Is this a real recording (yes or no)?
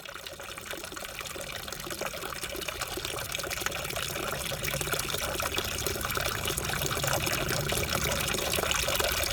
yes